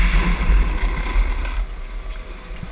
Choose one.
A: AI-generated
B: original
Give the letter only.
B